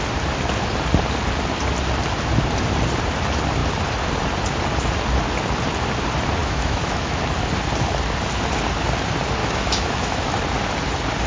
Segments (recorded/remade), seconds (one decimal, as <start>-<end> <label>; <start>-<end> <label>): 0.0-6.4 recorded; 6.4-7.2 remade; 7.2-9.4 recorded; 9.4-10.3 remade; 10.3-11.3 recorded